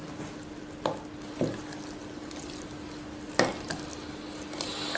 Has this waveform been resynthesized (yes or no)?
no